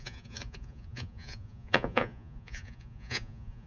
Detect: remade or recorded remade